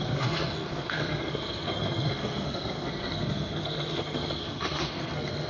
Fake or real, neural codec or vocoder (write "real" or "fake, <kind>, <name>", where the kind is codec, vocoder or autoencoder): fake, codec, SNAC